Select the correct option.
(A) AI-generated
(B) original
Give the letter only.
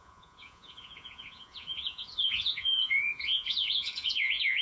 A